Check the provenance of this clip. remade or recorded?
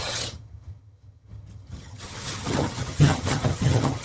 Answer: remade